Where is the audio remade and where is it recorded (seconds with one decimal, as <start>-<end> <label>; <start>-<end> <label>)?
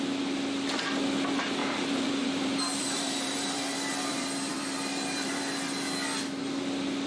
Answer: 0.0-1.6 recorded; 1.6-5.4 remade; 5.4-7.1 recorded